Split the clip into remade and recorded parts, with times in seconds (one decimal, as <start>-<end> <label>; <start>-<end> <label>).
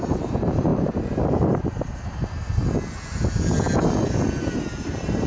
0.0-2.6 remade; 2.6-4.8 recorded; 4.8-5.3 remade